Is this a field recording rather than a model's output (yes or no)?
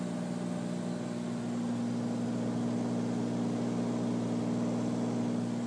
yes